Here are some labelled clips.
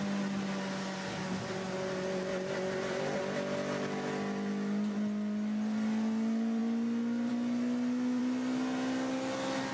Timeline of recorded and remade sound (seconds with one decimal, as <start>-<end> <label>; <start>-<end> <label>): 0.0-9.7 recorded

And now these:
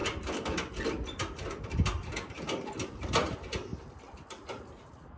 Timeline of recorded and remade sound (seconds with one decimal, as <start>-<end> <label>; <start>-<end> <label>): 0.0-5.2 recorded

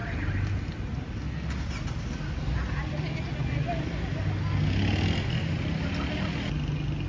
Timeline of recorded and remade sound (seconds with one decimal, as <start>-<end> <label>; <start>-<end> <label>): 0.0-7.1 recorded